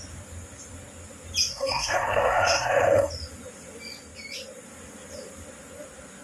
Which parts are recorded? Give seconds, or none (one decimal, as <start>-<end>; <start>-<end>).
0.0-1.5; 3.1-6.2